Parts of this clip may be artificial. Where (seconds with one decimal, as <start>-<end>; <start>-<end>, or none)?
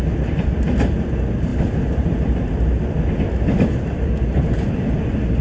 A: none